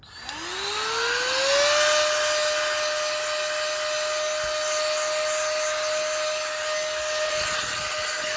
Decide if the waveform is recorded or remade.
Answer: recorded